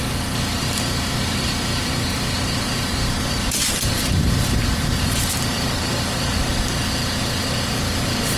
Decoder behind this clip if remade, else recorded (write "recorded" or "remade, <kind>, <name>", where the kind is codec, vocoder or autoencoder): recorded